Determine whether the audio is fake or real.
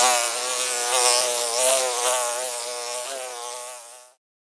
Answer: real